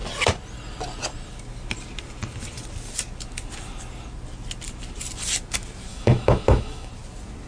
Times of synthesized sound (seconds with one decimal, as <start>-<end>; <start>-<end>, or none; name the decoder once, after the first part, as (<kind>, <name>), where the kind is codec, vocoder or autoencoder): 5.9-6.9 (autoencoder, DAC-VAE)